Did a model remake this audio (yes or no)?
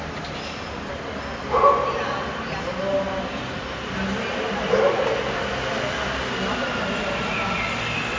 no